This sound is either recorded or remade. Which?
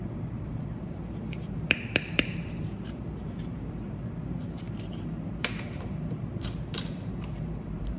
remade